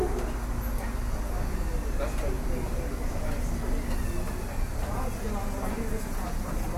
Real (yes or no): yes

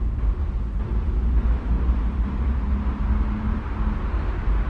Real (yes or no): yes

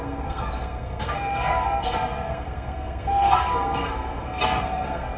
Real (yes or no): no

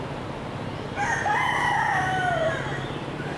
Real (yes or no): yes